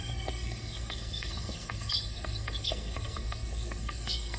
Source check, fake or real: fake